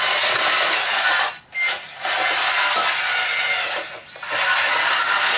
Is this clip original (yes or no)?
yes